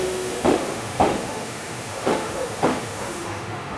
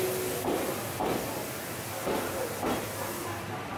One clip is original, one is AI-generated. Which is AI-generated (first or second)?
first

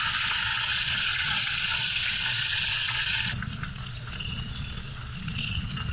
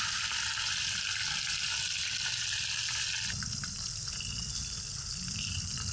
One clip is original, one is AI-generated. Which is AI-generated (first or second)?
first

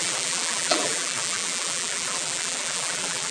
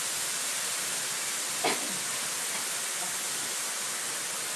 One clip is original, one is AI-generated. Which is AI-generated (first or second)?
first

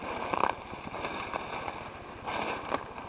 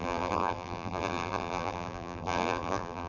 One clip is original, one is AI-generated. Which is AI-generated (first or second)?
second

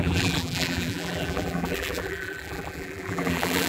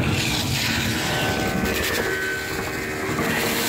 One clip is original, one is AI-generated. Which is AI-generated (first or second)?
first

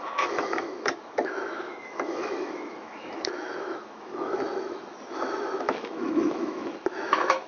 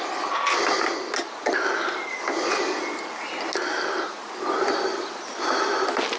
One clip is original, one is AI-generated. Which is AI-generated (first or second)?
first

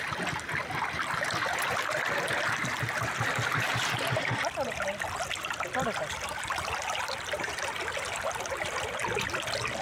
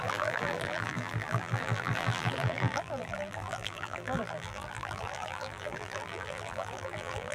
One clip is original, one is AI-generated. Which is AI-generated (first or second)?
second